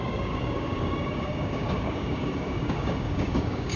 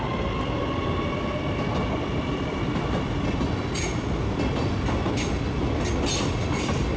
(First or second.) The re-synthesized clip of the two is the first